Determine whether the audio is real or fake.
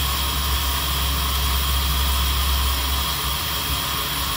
real